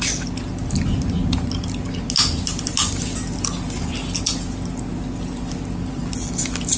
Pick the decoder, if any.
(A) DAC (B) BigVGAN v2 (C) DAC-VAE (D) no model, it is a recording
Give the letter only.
D